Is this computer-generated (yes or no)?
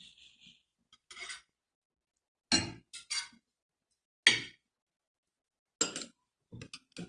no